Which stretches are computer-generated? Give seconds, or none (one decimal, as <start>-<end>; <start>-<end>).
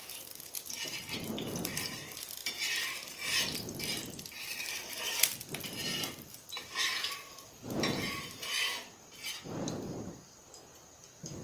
0.0-2.4; 3.6-11.4